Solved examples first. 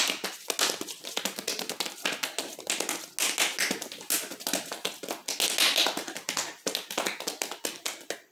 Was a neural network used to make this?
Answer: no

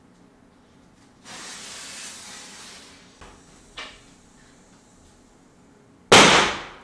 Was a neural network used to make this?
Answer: no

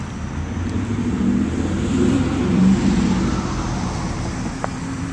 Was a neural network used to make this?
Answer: yes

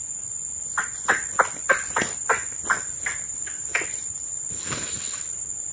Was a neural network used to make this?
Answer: no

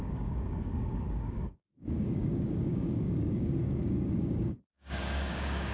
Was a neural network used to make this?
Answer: yes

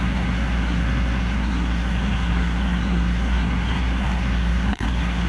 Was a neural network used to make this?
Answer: yes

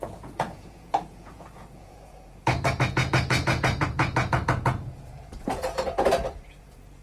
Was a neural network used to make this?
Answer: yes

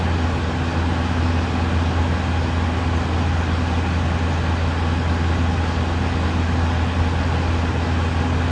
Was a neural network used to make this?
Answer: no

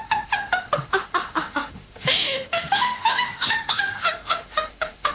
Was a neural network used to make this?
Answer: yes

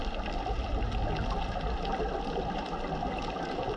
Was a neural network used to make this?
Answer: no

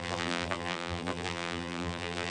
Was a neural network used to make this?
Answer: yes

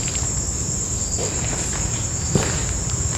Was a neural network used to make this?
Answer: yes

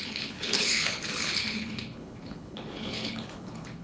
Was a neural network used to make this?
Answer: yes